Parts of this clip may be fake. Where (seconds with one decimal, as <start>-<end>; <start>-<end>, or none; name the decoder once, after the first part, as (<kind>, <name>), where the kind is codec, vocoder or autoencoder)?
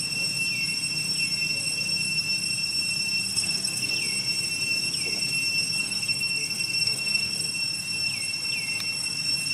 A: 3.3-3.9 (codec, SNAC); 5.8-7.3